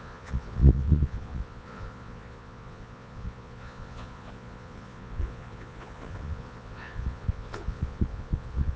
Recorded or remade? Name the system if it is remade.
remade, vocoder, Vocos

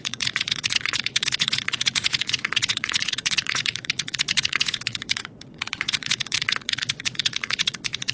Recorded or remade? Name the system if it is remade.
remade, vocoder, Vocos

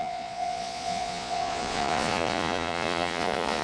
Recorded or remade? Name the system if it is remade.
remade, vocoder, Vocos